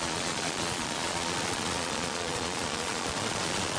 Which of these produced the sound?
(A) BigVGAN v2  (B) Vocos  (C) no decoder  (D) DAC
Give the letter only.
B